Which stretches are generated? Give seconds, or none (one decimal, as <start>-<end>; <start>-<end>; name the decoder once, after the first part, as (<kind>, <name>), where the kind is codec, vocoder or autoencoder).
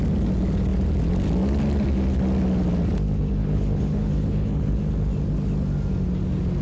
3.4-4.7 (codec, HILCodec)